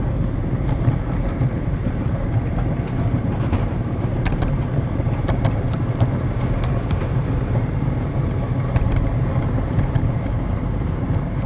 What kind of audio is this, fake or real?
fake